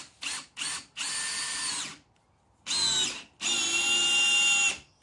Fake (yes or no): no